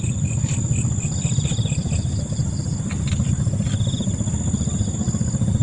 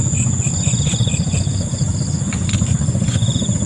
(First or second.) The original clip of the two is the first